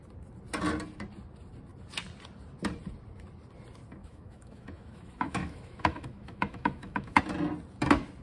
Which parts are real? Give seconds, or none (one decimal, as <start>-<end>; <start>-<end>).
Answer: 0.0-4.0; 7.2-8.2